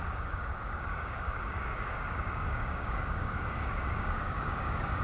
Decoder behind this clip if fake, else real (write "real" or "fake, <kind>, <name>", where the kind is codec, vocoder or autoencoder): fake, codec, DAC